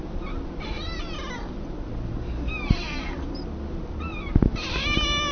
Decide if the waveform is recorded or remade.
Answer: recorded